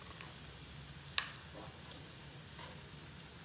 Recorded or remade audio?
recorded